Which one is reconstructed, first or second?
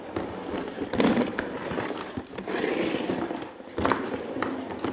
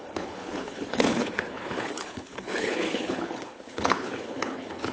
second